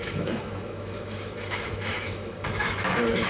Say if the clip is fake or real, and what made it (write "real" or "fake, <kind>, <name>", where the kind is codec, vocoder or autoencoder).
fake, autoencoder, DAC-VAE